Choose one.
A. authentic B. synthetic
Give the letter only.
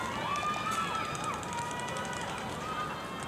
A